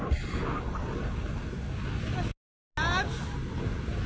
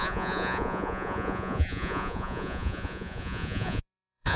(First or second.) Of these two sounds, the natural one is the first